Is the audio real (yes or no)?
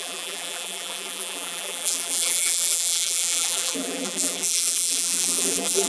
no